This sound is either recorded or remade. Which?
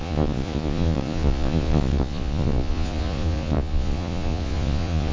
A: remade